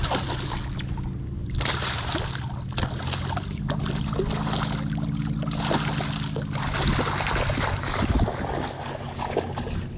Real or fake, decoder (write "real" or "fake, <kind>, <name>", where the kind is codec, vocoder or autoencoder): real